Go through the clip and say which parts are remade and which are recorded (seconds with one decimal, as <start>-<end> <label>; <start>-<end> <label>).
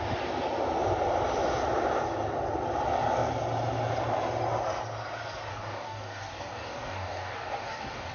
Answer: 0.0-5.5 recorded; 5.5-8.1 remade